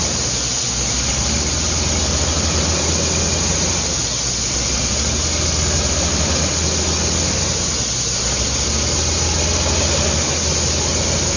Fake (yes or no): no